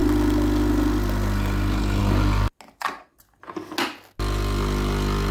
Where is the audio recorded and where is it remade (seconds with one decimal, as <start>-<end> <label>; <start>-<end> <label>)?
0.0-5.3 recorded